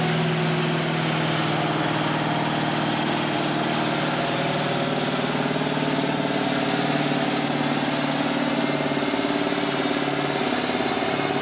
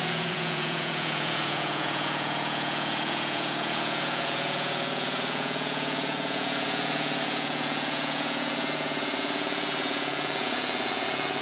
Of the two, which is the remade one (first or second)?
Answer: second